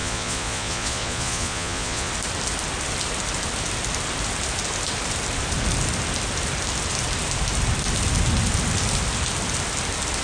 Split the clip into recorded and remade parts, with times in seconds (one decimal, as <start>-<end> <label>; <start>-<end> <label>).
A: 0.0-2.1 remade; 2.1-10.2 recorded